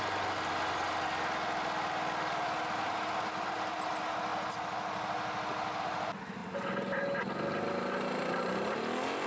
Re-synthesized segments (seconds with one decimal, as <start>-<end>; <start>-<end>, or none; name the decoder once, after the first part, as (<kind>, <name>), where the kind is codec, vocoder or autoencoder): none